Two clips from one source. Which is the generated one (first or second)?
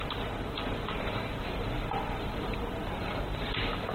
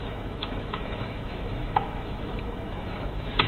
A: second